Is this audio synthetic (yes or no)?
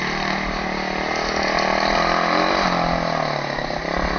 no